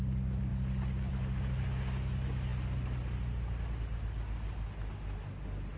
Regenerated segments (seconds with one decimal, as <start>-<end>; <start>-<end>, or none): none